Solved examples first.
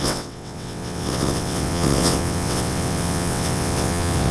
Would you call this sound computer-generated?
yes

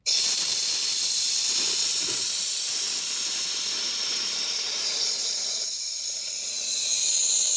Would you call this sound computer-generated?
no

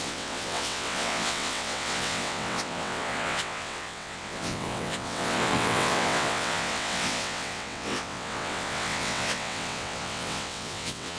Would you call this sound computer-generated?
yes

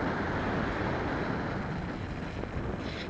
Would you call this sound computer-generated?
no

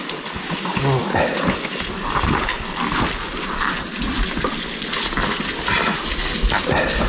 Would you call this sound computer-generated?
no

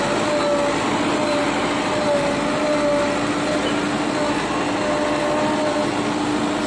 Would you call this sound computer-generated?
no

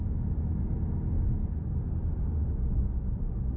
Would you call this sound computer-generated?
no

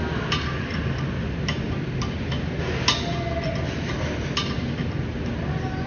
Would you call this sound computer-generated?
no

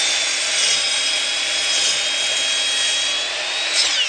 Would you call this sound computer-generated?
no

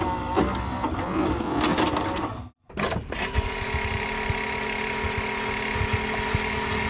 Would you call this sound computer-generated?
no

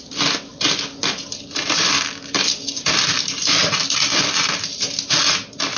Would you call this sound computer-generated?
no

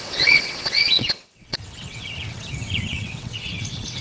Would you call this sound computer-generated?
yes